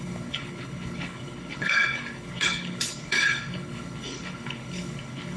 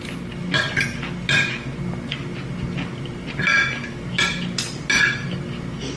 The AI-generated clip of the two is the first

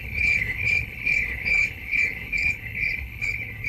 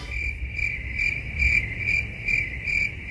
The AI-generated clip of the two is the first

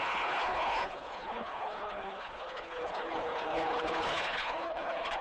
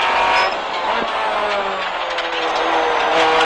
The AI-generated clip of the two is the first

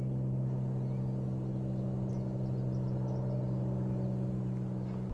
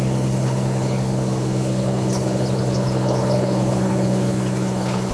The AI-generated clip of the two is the second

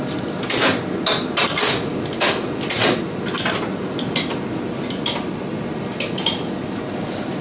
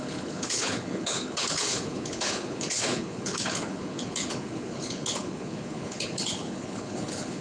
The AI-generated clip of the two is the second